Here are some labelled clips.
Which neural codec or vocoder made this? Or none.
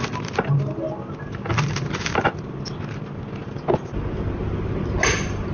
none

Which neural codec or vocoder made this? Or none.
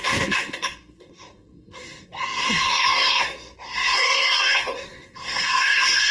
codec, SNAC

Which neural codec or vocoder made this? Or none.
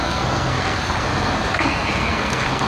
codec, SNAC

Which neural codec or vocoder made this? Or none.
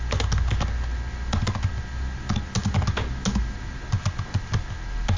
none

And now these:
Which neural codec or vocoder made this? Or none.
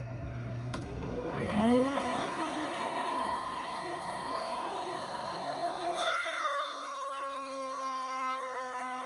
codec, SNAC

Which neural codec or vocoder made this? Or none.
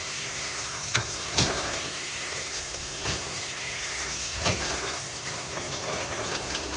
codec, SNAC